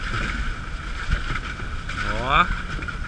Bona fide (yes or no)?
yes